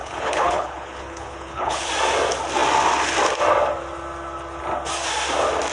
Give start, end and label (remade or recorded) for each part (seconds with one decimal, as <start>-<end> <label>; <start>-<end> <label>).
0.0-1.9 remade; 1.9-5.7 recorded